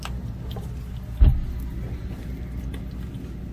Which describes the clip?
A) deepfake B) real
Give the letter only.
B